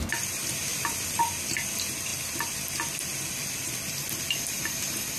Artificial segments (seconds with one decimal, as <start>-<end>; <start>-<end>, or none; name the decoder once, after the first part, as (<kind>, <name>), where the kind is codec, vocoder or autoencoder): none